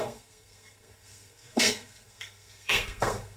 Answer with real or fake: fake